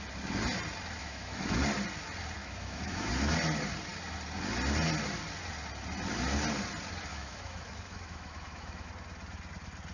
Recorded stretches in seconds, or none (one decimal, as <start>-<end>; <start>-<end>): 0.0-1.0; 1.6-2.4; 3.1-7.1; 8.9-9.9